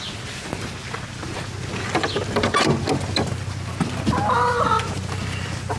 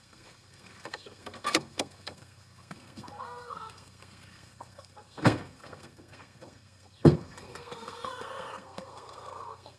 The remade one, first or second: second